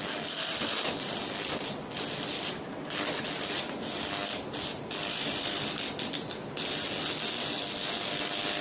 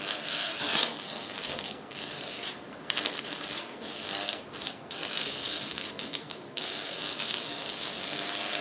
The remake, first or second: second